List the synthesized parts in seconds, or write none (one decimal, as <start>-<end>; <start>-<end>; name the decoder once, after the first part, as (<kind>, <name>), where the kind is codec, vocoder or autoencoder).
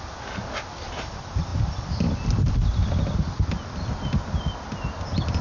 none